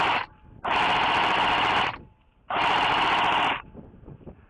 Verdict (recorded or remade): recorded